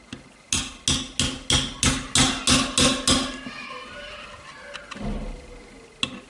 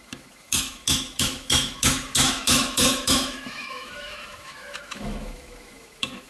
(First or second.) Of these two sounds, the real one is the first